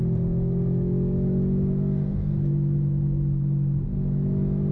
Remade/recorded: recorded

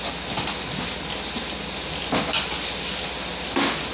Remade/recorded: recorded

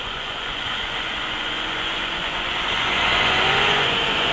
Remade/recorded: remade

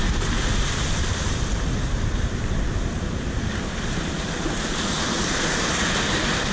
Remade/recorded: recorded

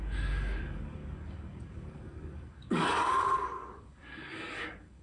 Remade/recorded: remade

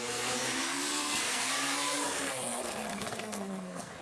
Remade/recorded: remade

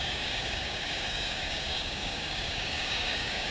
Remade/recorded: remade